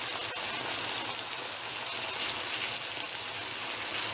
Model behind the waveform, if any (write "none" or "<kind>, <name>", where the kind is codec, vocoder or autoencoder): none